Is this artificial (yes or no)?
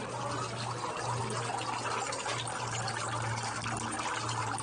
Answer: no